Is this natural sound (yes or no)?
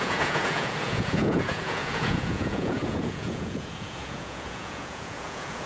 no